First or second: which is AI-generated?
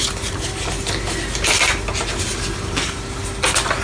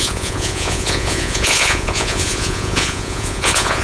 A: second